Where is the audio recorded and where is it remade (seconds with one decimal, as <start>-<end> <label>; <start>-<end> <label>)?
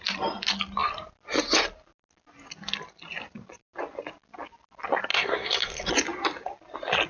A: 0.0-5.1 recorded; 5.1-5.9 remade; 5.9-7.1 recorded